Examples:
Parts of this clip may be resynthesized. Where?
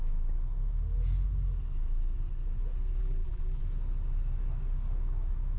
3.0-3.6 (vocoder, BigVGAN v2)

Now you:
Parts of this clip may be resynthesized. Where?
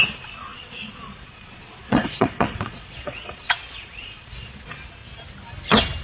0.0-5.0 (vocoder, Vocos)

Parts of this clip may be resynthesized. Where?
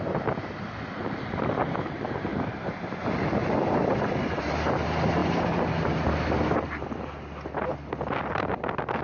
none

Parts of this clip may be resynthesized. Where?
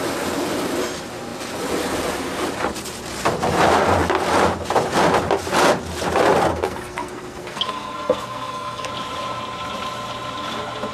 6.5-8.9 (codec, SNAC)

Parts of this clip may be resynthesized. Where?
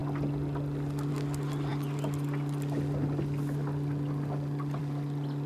none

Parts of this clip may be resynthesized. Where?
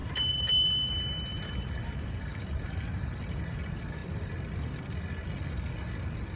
0.0-0.9 (vocoder, BigVGAN v2); 1.3-3.6; 4.0-4.7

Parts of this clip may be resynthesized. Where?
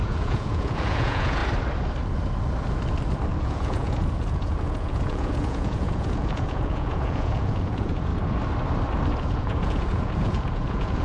0.0-1.4 (vocoder, Vocos); 3.4-8.1; 9.2-11.0